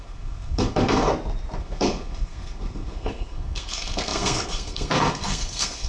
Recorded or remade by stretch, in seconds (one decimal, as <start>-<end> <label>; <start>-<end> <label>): 0.0-1.1 remade; 1.1-1.6 recorded; 1.6-5.9 remade